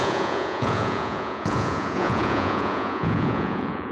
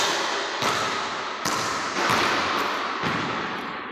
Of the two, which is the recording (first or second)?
second